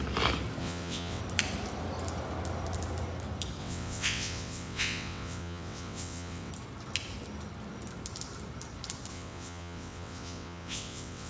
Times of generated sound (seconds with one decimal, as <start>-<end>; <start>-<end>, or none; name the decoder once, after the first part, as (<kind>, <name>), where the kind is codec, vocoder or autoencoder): 0.6-1.2 (vocoder, WaveNeXt); 3.6-6.5; 9.1-11.3